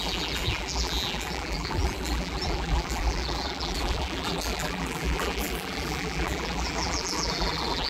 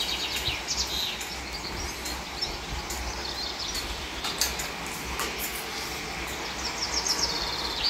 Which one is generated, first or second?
first